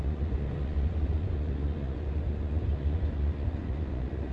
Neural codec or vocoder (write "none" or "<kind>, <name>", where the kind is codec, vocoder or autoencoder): vocoder, Vocos